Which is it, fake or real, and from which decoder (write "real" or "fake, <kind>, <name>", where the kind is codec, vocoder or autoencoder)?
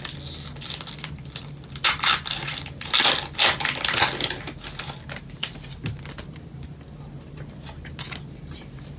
real